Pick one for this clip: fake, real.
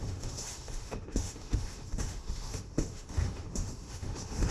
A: fake